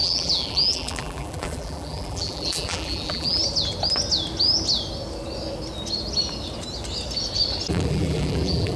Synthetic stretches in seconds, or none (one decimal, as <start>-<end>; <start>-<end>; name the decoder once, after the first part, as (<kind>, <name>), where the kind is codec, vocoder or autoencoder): 0.0-3.4 (vocoder, BigVGAN v2); 7.7-8.8